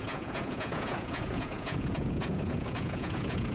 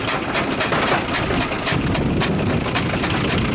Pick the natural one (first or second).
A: second